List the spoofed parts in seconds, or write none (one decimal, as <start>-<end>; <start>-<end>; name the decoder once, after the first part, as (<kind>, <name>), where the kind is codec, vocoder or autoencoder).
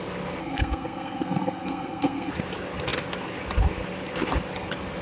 0.4-2.3 (codec, SNAC)